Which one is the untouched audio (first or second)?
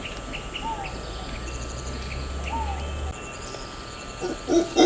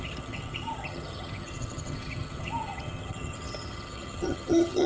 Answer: first